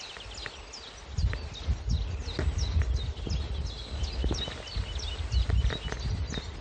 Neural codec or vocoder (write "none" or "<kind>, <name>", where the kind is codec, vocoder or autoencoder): none